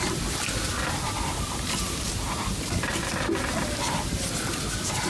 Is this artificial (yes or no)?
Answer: no